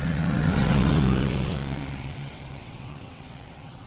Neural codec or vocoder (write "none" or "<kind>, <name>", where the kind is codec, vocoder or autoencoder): vocoder, WaveNeXt